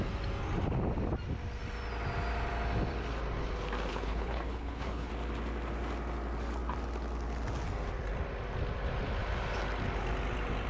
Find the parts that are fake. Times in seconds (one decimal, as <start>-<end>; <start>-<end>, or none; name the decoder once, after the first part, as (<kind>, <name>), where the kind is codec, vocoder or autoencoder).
3.9-5.1 (codec, HILCodec)